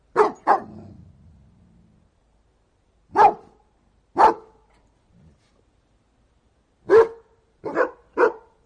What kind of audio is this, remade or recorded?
recorded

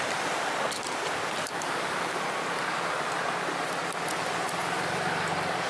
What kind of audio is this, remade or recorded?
recorded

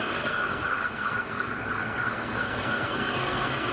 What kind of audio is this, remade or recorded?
remade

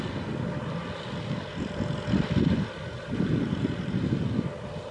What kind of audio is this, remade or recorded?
recorded